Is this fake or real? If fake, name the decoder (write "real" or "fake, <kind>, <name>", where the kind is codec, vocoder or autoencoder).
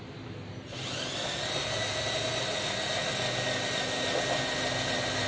real